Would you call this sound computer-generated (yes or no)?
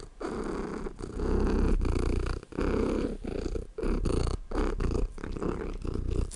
no